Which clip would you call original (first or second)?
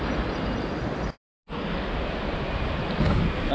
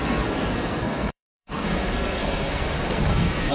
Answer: first